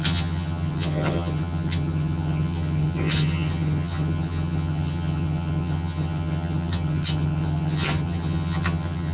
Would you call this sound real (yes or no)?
no